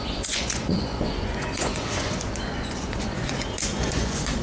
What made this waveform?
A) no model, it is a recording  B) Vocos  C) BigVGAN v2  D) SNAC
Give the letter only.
B